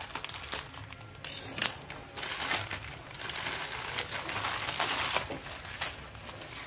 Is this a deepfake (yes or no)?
no